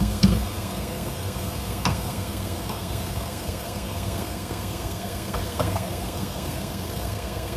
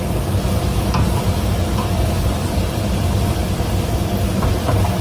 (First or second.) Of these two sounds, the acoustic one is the second